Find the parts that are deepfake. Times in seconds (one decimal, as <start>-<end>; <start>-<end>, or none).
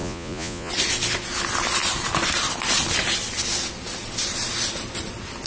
0.0-0.7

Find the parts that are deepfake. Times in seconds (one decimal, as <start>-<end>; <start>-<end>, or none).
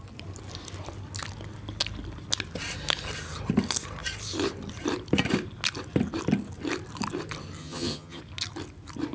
7.6-8.2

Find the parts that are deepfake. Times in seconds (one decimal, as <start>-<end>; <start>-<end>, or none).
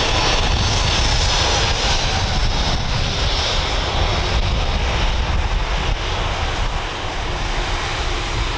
none